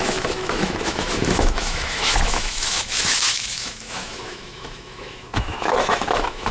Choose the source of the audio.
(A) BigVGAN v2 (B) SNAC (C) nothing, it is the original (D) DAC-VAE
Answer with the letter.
D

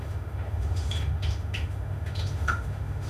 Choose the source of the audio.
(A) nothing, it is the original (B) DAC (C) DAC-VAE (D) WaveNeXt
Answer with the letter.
C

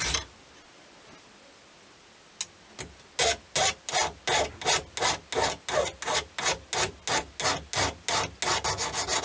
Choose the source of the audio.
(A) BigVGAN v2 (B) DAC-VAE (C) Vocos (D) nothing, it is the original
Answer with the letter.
D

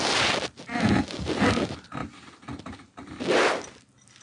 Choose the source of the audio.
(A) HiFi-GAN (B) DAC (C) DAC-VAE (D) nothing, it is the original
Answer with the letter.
D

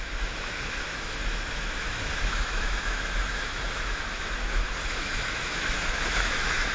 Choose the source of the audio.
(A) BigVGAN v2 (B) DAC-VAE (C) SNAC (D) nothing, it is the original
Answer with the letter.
B